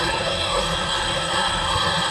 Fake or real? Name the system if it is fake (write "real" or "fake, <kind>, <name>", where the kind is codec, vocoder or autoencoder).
fake, codec, SNAC